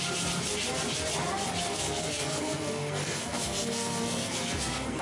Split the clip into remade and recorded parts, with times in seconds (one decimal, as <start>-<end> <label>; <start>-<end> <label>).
0.0-1.7 recorded; 1.7-5.0 remade